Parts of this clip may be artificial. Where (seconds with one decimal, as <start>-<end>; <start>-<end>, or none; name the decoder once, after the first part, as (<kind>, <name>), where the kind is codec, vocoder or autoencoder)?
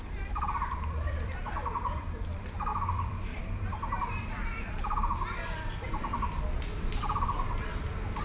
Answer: 0.0-8.2 (vocoder, BigVGAN v2)